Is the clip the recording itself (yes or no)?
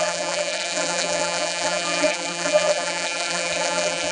no